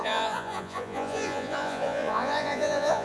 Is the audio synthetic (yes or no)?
yes